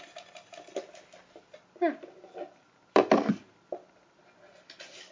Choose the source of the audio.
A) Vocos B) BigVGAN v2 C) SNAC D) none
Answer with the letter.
D